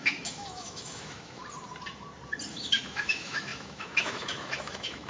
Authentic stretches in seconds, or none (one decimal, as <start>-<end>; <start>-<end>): 1.4-2.5